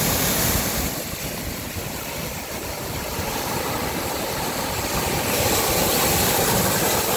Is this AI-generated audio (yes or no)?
yes